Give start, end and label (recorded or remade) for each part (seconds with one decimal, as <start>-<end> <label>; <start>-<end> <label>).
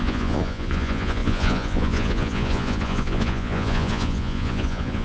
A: 0.0-5.0 remade